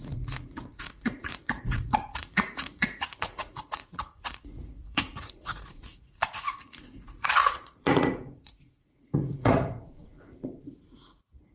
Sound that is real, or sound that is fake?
fake